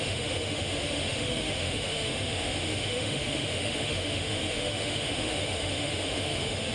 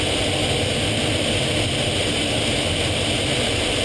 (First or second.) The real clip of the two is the second